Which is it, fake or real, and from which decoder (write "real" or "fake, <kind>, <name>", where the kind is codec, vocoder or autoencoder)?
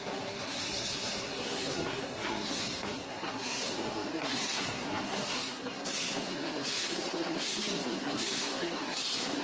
fake, codec, SNAC